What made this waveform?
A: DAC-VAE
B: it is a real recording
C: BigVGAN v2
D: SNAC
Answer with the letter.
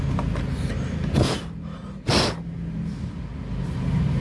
B